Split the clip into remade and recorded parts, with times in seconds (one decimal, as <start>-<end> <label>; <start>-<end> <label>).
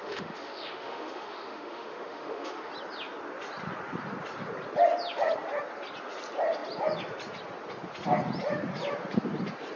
0.0-2.7 remade; 2.7-9.8 recorded